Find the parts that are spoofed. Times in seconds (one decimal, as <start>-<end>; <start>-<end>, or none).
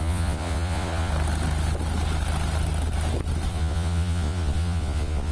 0.0-1.1; 3.5-5.3